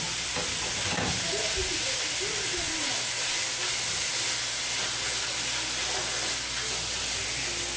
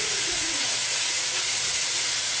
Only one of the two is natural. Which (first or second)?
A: first